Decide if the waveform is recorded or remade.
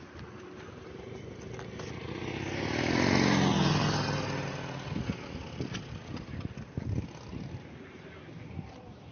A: recorded